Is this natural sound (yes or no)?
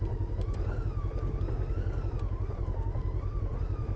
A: yes